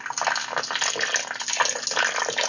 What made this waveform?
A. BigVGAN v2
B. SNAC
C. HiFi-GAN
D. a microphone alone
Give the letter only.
D